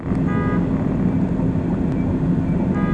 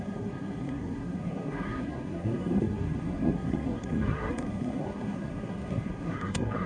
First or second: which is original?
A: first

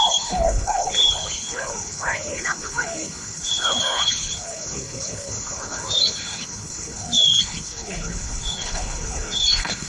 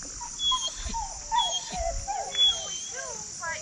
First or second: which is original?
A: second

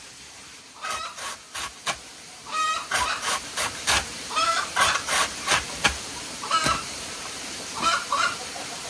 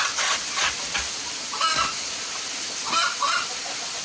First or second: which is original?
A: second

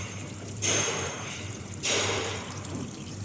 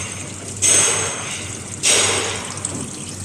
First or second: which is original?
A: second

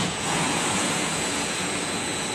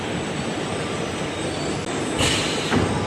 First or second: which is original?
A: second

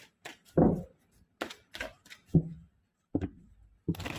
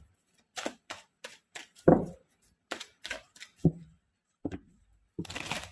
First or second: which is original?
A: first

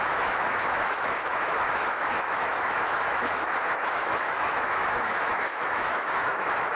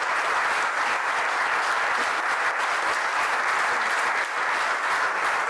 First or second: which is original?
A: second